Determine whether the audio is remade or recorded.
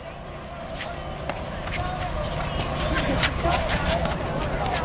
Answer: recorded